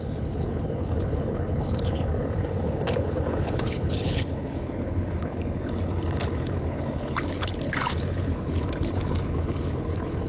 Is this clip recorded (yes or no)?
no